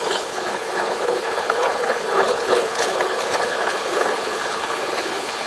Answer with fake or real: fake